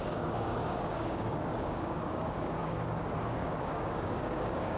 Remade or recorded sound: remade